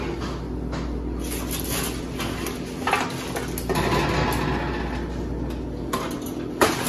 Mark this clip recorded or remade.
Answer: recorded